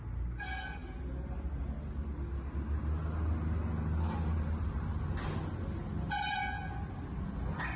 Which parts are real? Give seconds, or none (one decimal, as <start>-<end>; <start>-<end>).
0.0-7.8